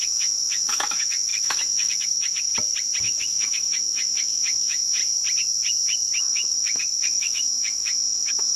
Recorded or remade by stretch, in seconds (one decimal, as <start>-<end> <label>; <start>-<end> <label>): 0.0-2.5 remade; 2.5-3.0 recorded; 3.0-5.0 remade; 5.0-6.2 recorded; 6.2-8.6 remade